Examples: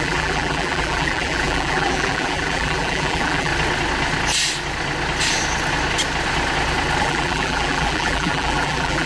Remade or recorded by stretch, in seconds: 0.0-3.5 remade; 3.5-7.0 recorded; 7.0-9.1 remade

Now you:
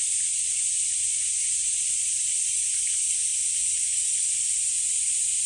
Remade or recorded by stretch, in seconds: 0.0-5.5 remade

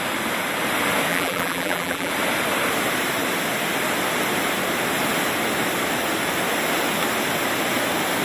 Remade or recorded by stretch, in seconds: 0.0-1.1 recorded; 1.1-2.1 remade; 2.1-8.2 recorded

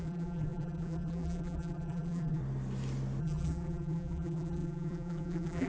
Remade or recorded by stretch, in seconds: 0.0-2.4 remade; 2.4-3.2 recorded; 3.2-5.7 remade

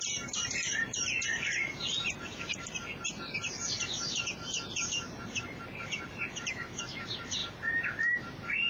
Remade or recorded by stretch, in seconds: 0.0-7.4 remade; 7.4-8.7 recorded

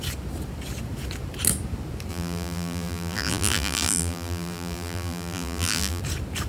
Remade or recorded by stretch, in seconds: 0.0-2.1 recorded; 2.1-6.0 remade; 6.0-6.5 recorded

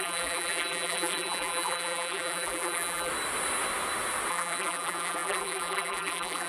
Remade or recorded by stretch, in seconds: 0.0-3.1 remade; 3.1-4.3 recorded; 4.3-6.5 remade

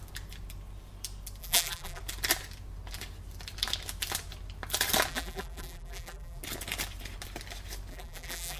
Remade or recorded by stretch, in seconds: 0.0-1.4 recorded; 1.4-2.0 remade; 2.0-5.1 recorded; 5.1-6.4 remade; 6.4-7.9 recorded; 7.9-8.6 remade